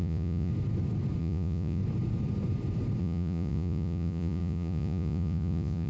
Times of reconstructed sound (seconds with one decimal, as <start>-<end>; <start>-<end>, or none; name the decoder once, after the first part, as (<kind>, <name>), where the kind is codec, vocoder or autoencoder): 0.0-0.5 (vocoder, Vocos); 1.2-1.8; 3.0-5.9